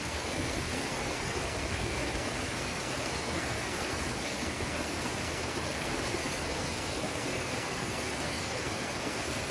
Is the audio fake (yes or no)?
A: yes